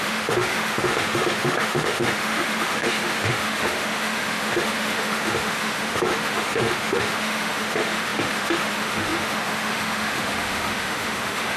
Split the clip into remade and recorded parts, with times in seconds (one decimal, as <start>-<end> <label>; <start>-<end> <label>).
0.0-11.6 remade